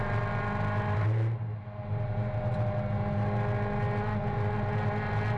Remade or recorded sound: recorded